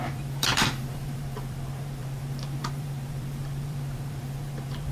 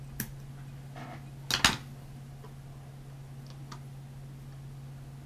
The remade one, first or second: first